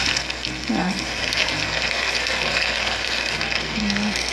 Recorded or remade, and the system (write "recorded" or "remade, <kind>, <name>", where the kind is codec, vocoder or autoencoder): remade, codec, SNAC